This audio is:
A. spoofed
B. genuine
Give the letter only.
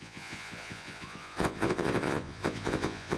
A